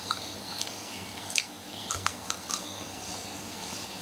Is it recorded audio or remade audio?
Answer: remade